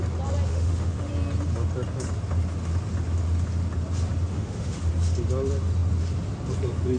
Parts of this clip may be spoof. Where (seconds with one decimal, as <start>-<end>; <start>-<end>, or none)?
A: 0.5-1.1; 4.3-4.9